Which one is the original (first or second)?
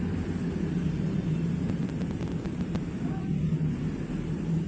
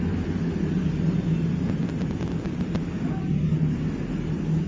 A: second